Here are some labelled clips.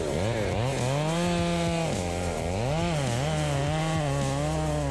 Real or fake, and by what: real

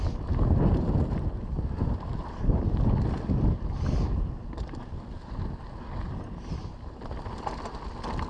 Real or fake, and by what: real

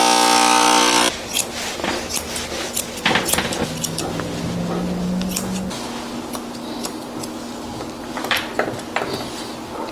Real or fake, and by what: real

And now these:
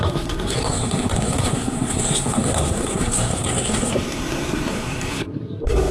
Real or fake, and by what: fake, codec, SNAC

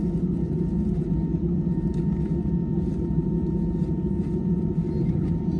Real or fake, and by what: real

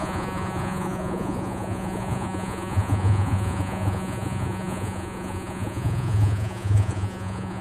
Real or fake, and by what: fake, vocoder, Vocos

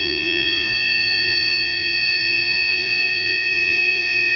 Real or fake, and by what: fake, vocoder, Vocos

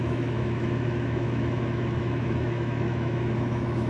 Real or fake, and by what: fake, autoencoder, DAC-VAE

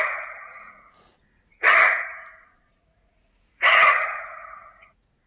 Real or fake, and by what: fake, vocoder, Vocos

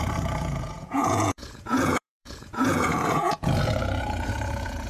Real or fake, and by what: fake, vocoder, Vocos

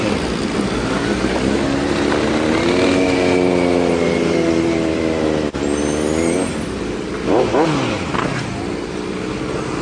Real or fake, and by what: real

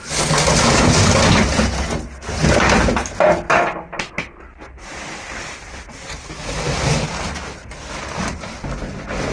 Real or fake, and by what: real